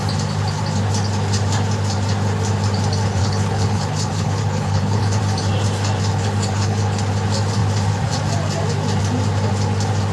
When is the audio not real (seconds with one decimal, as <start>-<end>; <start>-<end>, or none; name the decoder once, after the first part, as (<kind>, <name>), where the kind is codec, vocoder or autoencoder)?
3.2-5.2 (codec, HILCodec); 6.1-7.0